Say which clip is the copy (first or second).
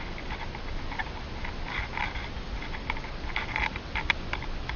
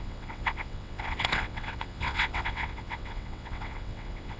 second